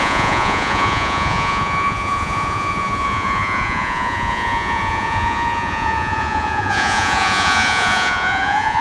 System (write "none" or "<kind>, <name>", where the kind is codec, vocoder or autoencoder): vocoder, Vocos